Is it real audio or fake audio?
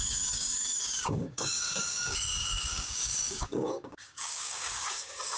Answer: fake